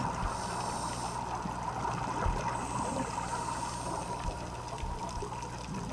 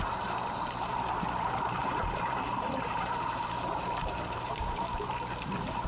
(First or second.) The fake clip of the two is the second